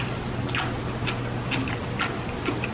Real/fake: real